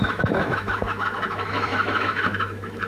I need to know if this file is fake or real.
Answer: fake